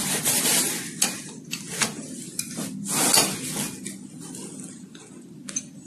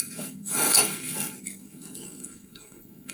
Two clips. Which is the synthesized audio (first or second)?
second